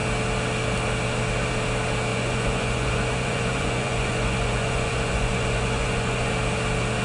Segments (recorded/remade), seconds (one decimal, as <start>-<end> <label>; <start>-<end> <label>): 0.0-2.1 recorded; 2.1-6.3 remade; 6.3-7.0 recorded